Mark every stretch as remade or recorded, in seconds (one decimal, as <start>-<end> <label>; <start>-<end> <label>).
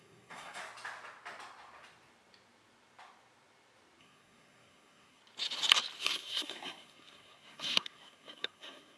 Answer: 0.0-0.6 remade; 0.6-4.0 recorded; 4.0-5.2 remade; 5.2-6.0 recorded; 6.0-9.0 remade